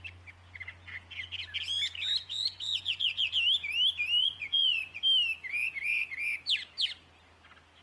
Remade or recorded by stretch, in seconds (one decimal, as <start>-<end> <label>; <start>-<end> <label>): 0.0-2.2 recorded; 2.2-3.3 remade; 3.3-4.2 recorded; 4.2-5.0 remade; 5.0-7.8 recorded